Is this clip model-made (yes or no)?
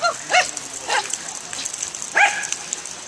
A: no